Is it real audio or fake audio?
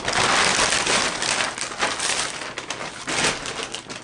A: real